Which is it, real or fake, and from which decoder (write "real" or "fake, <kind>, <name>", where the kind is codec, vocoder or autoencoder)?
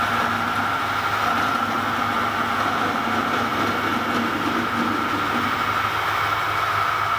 real